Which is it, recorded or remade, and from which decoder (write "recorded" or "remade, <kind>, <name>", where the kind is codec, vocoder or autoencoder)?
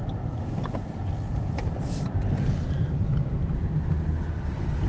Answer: remade, vocoder, BigVGAN v2